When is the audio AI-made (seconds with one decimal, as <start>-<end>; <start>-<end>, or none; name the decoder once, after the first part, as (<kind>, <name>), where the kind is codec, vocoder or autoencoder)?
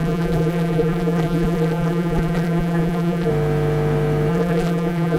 0.0-3.3 (vocoder, BigVGAN v2); 4.3-5.2